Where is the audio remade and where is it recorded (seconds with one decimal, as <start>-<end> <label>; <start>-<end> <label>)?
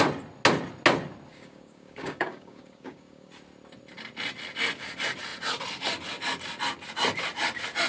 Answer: 0.0-1.3 recorded; 1.3-3.3 remade; 3.3-7.9 recorded